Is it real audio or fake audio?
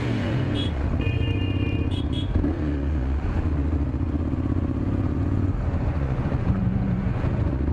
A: fake